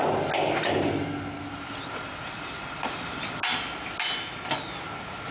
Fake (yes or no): no